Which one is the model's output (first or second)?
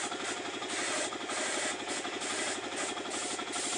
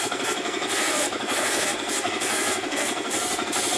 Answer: second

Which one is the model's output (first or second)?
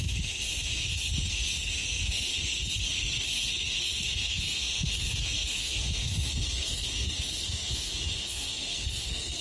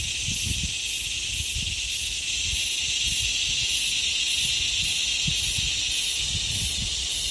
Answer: first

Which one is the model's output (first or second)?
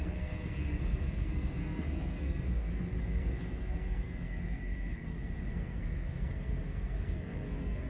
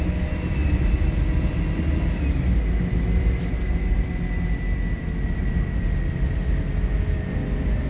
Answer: first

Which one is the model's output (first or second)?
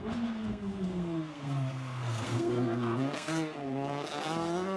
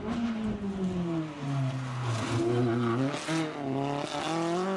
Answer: first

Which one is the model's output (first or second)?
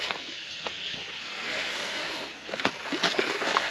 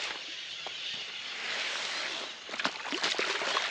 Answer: first